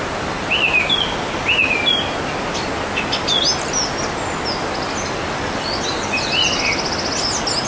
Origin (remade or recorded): recorded